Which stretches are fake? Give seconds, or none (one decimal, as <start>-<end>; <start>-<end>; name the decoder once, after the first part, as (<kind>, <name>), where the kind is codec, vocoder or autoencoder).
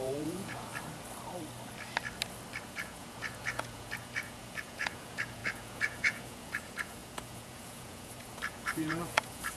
0.0-0.7 (vocoder, Vocos); 2.6-9.6